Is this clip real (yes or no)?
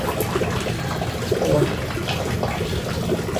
yes